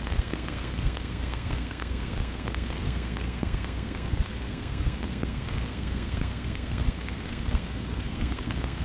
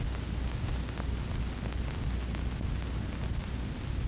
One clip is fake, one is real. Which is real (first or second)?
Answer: second